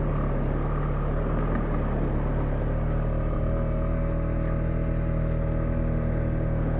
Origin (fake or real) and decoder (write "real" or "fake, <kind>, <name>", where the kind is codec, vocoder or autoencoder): real